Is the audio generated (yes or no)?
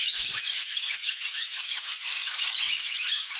yes